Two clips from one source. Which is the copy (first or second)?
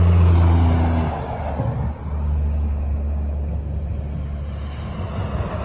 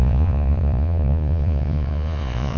second